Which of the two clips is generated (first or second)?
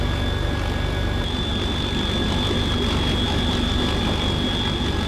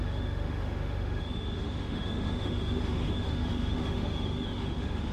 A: second